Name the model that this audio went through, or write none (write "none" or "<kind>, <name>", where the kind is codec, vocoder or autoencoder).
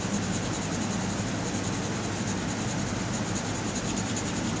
none